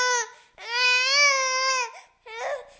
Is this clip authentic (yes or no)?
yes